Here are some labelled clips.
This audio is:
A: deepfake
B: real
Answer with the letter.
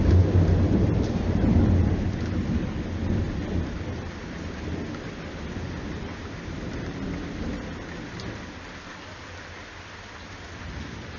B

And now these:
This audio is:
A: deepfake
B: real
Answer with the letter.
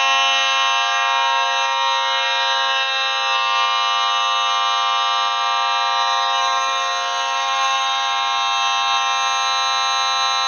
B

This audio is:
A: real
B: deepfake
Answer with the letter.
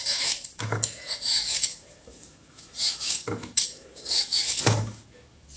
B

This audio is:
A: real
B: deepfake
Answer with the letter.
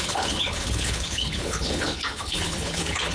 B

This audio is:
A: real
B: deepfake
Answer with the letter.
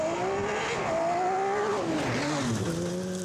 A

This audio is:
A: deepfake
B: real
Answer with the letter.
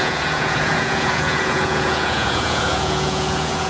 A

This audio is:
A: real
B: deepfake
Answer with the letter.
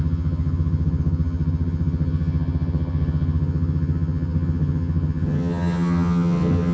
B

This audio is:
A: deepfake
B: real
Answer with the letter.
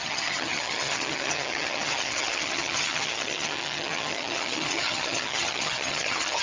A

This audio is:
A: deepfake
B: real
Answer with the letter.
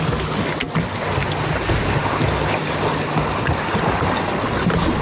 B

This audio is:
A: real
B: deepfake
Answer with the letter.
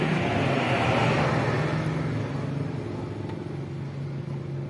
A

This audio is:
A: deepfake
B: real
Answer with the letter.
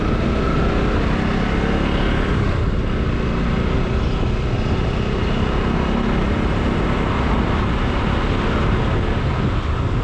B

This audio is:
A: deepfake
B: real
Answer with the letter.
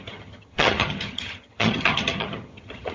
A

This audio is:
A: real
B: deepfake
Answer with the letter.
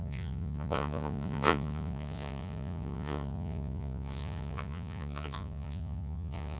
B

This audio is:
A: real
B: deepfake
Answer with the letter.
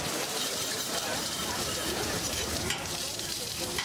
B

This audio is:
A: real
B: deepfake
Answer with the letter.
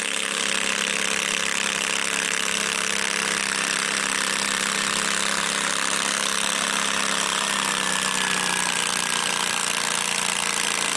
A